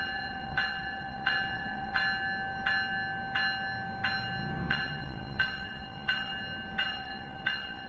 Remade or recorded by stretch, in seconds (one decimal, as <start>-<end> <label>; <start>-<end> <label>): 0.0-2.0 remade; 2.0-4.7 recorded; 4.7-6.3 remade; 6.3-6.9 recorded; 6.9-7.9 remade